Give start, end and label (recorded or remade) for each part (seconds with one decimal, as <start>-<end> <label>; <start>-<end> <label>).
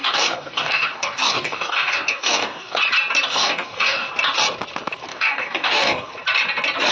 0.0-2.8 remade; 2.8-3.3 recorded; 3.3-4.1 remade; 4.1-5.1 recorded; 5.1-6.1 remade; 6.1-6.9 recorded